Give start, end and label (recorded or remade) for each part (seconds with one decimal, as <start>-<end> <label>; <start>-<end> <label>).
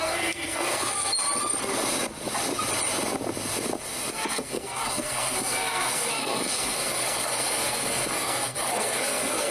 0.0-1.1 remade; 1.1-4.1 recorded; 4.1-9.5 remade